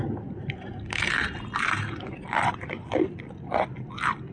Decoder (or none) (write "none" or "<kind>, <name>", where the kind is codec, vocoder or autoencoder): none